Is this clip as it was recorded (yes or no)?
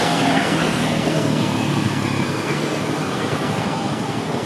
no